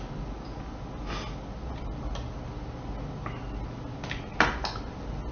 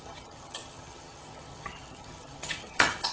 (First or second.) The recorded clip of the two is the first